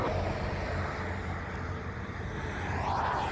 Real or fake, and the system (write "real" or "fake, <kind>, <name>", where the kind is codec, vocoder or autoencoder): real